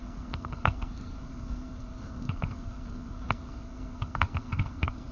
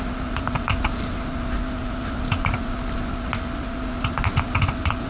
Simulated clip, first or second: first